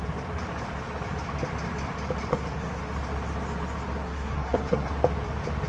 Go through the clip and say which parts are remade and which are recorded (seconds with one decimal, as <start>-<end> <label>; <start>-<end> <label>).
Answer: 0.0-2.3 recorded; 2.3-2.8 remade; 2.8-4.0 recorded; 4.0-4.9 remade; 4.9-5.7 recorded